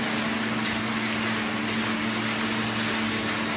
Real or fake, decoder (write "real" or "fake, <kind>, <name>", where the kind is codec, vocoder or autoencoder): real